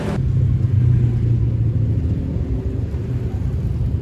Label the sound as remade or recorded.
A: recorded